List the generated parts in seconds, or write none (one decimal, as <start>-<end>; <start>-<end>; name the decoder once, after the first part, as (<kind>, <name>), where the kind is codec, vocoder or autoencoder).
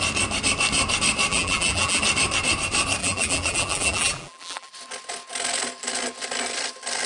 1.3-2.0 (vocoder, BigVGAN v2); 3.0-4.7